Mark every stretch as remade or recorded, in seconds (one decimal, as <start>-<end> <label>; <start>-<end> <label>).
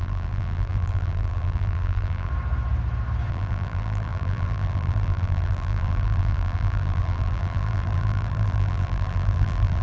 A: 0.0-2.3 remade; 2.3-3.3 recorded; 3.3-9.8 remade